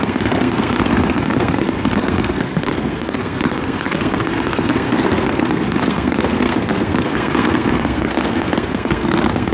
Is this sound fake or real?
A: fake